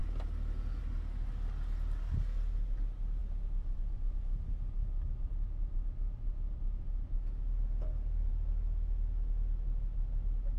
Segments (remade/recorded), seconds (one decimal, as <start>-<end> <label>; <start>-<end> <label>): 0.0-10.6 recorded